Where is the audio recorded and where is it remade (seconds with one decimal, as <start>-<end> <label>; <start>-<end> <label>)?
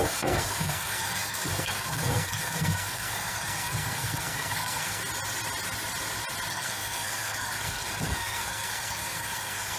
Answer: 0.0-5.0 remade; 5.0-6.5 recorded; 6.5-9.8 remade